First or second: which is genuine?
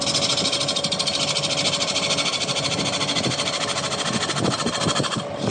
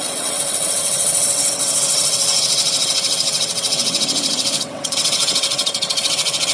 first